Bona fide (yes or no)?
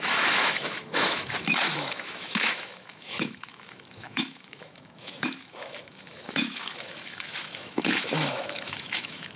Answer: no